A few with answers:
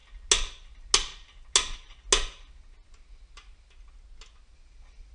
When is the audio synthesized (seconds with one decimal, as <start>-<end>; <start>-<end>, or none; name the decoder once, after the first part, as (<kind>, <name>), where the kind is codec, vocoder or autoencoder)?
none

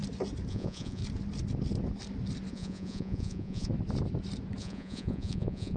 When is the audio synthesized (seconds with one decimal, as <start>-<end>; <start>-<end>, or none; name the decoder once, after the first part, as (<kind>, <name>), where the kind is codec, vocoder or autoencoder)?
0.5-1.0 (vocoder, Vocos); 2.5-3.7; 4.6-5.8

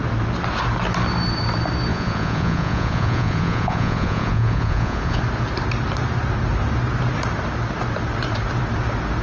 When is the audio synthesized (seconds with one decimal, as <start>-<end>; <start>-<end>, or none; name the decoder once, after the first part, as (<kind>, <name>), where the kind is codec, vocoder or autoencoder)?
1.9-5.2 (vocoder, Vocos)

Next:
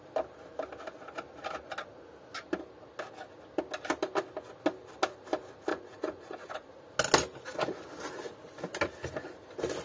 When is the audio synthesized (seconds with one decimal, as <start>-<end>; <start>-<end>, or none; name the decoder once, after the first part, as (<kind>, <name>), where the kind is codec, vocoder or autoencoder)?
5.7-6.8 (vocoder, Vocos)

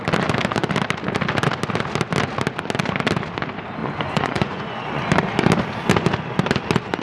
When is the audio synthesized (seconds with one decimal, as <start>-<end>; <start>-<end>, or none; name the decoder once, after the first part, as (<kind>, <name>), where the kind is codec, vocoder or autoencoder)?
3.8-5.0 (vocoder, Vocos)

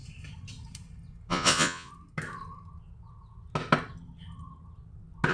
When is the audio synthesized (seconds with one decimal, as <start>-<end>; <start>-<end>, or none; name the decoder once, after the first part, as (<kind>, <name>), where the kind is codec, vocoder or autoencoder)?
1.3-1.9 (vocoder, Vocos)